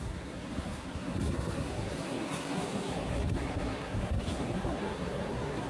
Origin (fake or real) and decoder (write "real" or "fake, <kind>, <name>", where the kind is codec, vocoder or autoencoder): fake, codec, SNAC